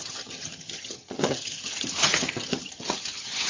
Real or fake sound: fake